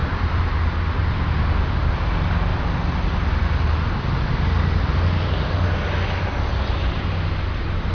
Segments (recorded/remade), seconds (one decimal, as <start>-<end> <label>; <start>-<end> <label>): 0.0-7.9 recorded